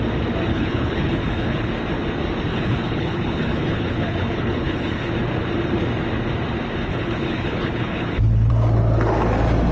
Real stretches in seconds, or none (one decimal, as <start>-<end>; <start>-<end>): 0.0-0.5; 1.7-2.5; 5.1-6.9; 8.5-9.7